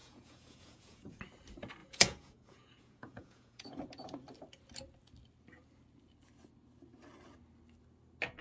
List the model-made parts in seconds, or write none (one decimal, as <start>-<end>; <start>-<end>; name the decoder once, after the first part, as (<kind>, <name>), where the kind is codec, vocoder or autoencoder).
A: 0.0-1.2 (vocoder, Vocos); 1.8-3.8